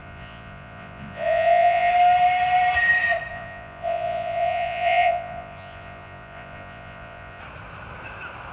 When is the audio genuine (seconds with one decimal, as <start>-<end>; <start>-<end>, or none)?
1.9-3.3; 7.4-8.5